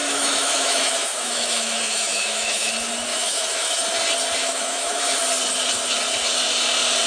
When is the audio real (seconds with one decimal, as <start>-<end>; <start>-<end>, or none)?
2.7-3.1; 3.7-4.4; 5.0-7.1